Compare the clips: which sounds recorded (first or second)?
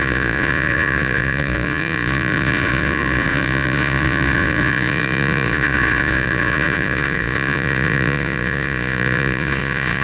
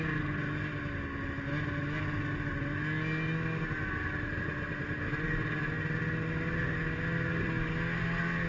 second